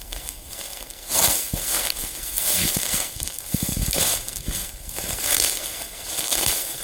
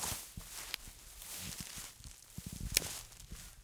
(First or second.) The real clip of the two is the second